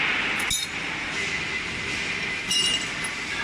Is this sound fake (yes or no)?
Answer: no